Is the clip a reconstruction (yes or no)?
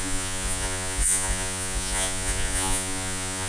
yes